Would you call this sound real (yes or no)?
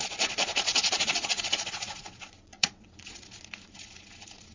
no